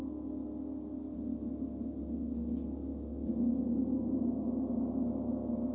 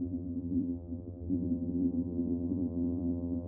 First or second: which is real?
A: first